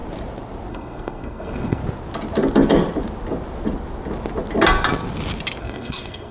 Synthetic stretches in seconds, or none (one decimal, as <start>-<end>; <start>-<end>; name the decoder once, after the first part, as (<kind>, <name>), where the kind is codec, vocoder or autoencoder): 0.7-1.8 (codec, SNAC); 5.6-6.3